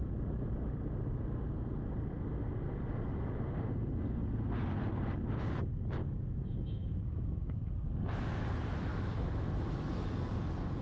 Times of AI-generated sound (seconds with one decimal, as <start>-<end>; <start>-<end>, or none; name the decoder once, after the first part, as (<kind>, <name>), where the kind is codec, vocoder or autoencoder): 6.0-7.5 (autoencoder, DAC-VAE); 8.9-10.1